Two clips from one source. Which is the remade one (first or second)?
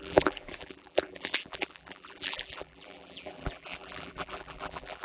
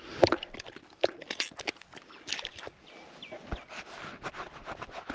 first